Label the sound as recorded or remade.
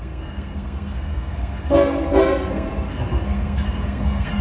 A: remade